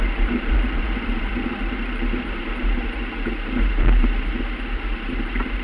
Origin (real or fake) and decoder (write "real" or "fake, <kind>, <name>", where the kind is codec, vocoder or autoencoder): fake, vocoder, BigVGAN v2